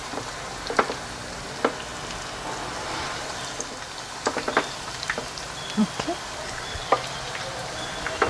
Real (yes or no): no